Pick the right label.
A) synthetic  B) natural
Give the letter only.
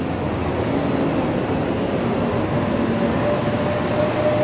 B